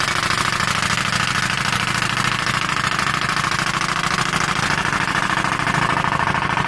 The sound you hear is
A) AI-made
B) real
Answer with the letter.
B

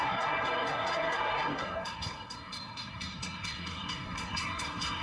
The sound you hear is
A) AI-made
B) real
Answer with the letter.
A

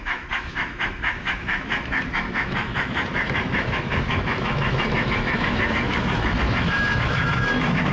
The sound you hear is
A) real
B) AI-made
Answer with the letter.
B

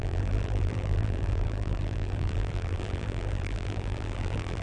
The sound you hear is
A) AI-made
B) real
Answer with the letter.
A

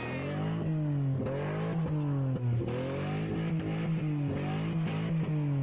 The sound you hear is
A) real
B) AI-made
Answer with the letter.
A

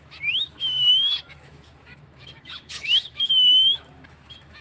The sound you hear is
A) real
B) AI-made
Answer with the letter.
B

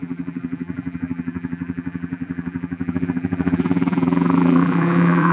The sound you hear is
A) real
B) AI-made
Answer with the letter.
B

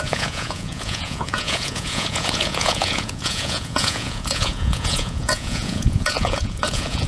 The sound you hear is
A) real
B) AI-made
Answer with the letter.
B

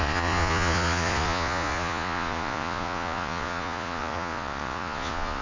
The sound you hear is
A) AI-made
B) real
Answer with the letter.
A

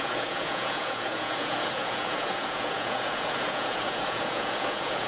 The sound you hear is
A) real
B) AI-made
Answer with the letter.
B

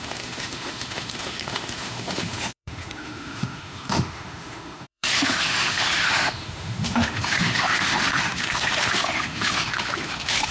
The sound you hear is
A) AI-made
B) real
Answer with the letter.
A